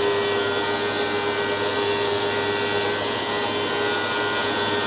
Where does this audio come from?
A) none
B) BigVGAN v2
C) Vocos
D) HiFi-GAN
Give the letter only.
A